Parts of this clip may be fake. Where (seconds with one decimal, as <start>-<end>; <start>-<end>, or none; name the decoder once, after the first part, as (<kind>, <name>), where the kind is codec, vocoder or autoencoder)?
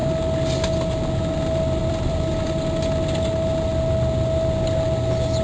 1.8-2.5 (vocoder, BigVGAN v2)